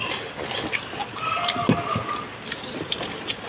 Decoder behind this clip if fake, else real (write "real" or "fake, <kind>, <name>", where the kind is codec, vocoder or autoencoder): real